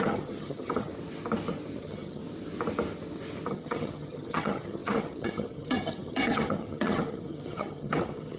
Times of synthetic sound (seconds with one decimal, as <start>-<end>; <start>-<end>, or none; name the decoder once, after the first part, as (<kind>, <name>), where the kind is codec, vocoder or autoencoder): 0.0-0.9 (vocoder, HiFi-GAN); 1.8-2.2; 3.5-8.4